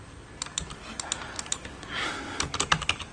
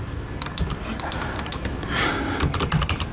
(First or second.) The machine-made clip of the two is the second